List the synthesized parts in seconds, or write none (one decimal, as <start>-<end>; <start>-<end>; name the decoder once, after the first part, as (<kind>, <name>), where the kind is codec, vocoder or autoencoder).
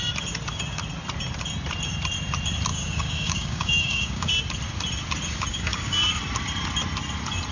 2.7-4.3 (codec, DAC); 5.5-6.0